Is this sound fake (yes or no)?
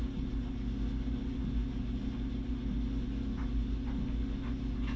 no